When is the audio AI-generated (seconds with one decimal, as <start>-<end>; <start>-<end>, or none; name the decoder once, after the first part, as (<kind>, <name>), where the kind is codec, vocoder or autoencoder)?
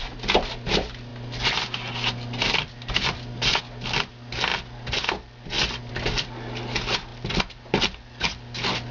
none